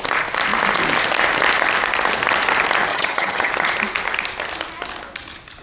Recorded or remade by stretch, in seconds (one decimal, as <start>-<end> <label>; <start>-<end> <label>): 0.0-2.9 recorded; 2.9-3.5 remade; 3.5-5.6 recorded